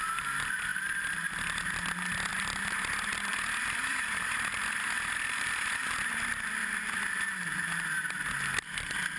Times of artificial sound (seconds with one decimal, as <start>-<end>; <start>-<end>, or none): 2.3-7.3